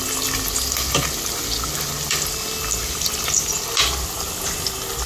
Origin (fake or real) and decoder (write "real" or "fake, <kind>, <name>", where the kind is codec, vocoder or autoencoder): real